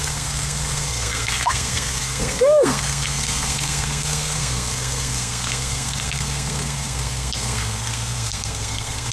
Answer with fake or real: fake